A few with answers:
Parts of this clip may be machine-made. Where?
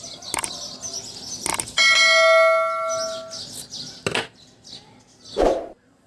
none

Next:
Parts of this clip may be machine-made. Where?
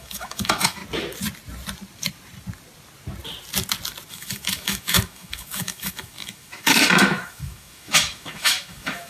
0.0-0.8 (autoencoder, DAC-VAE); 4.1-9.1